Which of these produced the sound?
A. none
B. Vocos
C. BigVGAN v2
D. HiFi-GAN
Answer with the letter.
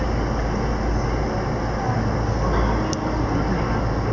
A